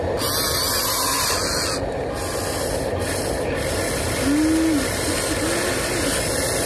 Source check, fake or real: real